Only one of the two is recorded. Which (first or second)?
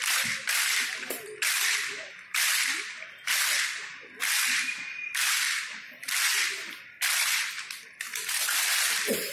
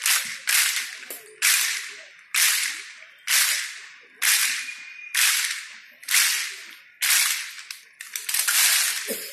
second